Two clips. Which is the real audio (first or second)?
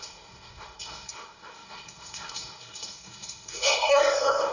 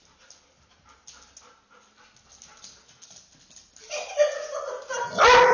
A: second